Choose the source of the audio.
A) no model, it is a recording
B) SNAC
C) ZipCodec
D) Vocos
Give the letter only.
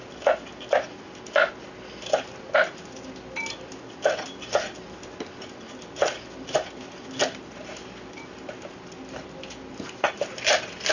A